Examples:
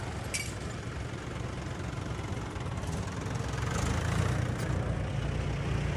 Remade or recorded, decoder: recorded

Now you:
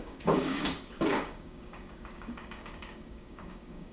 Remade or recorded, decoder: remade, codec, DAC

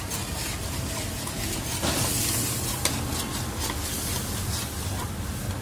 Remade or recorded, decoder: recorded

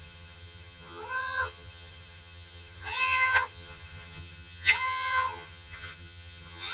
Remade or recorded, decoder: remade, vocoder, HiFi-GAN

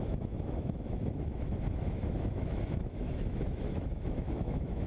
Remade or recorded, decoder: remade, autoencoder, DAC-VAE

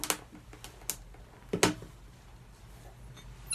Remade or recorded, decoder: recorded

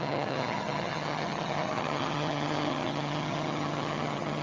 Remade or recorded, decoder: remade, vocoder, HiFi-GAN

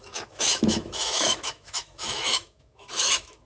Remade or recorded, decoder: remade, autoencoder, DAC-VAE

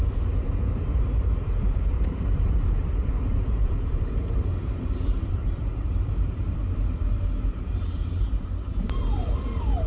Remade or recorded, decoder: remade, vocoder, BigVGAN v2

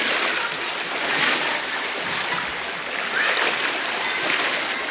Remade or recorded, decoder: recorded